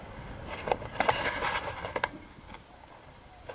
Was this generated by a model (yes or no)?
no